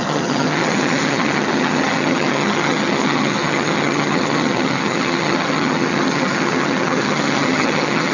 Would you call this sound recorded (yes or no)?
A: no